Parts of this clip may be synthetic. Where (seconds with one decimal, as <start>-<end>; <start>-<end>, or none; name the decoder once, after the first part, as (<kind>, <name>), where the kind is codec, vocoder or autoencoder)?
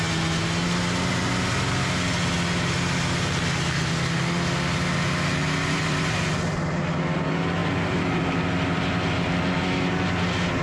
none